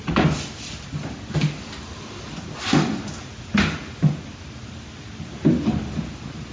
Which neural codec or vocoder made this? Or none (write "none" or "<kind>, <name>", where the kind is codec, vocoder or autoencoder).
none